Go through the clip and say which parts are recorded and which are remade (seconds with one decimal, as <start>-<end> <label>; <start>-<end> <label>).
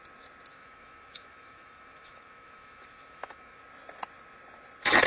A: 0.0-0.5 recorded; 0.5-3.6 remade; 3.6-5.1 recorded